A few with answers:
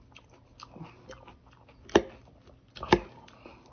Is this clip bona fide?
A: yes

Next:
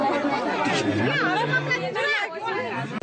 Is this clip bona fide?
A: yes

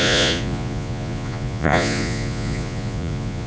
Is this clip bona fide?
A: no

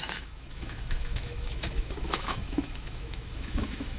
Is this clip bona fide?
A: no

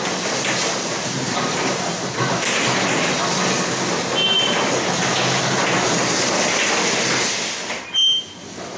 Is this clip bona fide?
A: yes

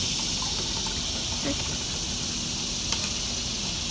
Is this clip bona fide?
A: yes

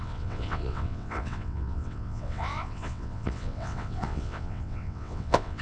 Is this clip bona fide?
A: no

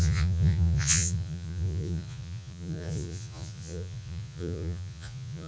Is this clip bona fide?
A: no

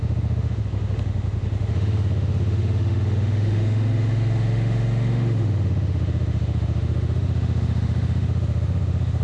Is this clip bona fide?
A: no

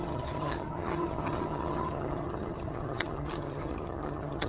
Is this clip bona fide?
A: no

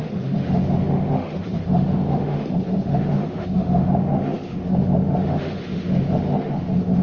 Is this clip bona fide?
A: no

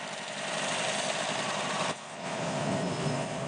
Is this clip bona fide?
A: yes